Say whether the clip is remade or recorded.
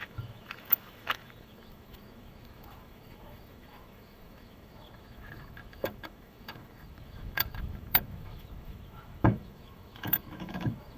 remade